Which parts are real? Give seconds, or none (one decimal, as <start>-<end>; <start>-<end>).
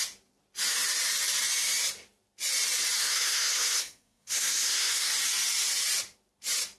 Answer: 0.0-3.0; 5.1-6.8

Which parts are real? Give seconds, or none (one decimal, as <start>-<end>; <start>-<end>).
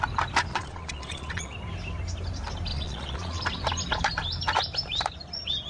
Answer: 0.0-0.5; 1.5-2.7; 3.4-5.7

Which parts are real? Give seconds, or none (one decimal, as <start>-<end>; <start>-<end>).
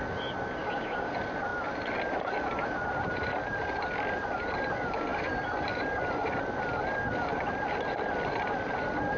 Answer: 0.0-0.6; 1.1-9.2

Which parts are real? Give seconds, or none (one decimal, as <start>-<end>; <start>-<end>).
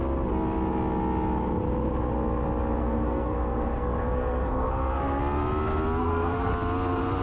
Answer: 0.0-2.8; 5.2-6.0; 6.5-7.2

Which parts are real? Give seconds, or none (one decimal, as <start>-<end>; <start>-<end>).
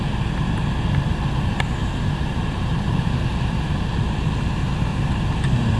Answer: 0.0-1.8; 3.7-4.9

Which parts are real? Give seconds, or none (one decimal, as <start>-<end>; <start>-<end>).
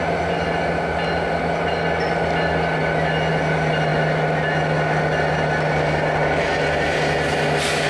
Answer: 0.0-7.9